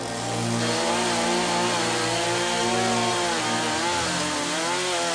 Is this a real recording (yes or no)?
yes